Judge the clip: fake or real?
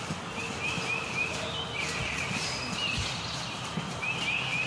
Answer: real